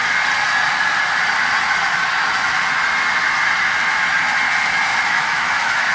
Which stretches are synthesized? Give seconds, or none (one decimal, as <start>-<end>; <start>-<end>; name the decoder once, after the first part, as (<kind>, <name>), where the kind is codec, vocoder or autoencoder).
4.9-5.9 (autoencoder, DAC-VAE)